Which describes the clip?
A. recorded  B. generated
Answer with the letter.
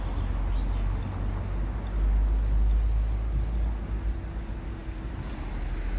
A